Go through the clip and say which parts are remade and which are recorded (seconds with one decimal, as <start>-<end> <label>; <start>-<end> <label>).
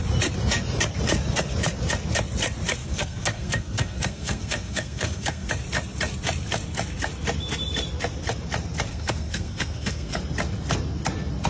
0.0-2.8 recorded; 2.8-5.5 remade; 5.5-8.9 recorded; 8.9-10.2 remade; 10.2-11.5 recorded